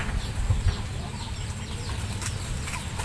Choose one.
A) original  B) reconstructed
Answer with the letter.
A